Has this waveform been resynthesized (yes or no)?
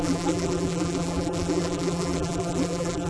yes